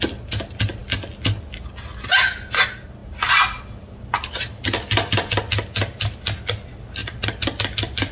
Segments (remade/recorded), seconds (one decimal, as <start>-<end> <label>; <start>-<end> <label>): 0.0-8.1 recorded